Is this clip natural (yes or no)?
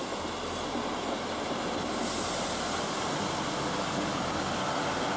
yes